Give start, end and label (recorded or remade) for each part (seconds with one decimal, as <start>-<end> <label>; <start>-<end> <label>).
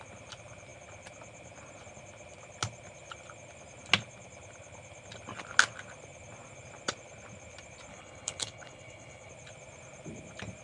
0.0-7.9 recorded; 7.9-9.3 remade; 9.3-10.6 recorded